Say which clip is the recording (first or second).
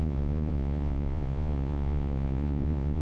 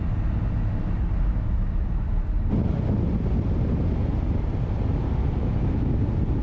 second